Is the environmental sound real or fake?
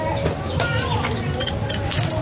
real